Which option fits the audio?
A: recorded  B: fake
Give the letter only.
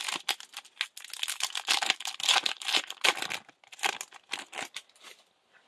A